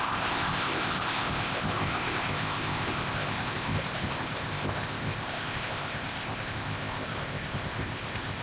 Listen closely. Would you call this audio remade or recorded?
remade